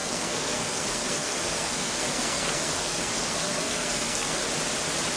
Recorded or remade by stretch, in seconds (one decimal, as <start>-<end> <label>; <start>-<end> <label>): 0.0-4.4 remade; 4.4-5.2 recorded